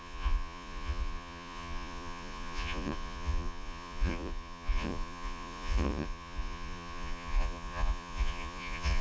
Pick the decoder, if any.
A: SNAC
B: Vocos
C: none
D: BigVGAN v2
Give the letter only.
B